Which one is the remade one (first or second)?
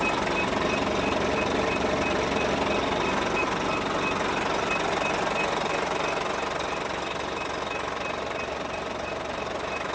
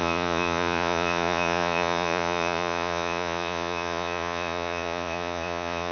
second